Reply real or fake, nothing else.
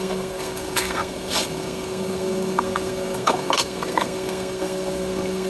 fake